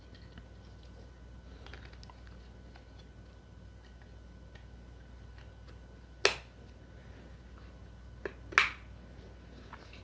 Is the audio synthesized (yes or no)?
no